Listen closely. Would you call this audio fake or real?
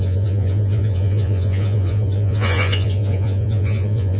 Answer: fake